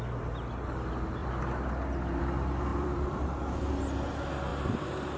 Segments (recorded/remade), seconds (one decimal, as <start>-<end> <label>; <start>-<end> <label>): 0.0-1.2 recorded; 1.2-2.2 remade; 2.2-2.7 recorded; 2.7-3.7 remade; 3.7-5.2 recorded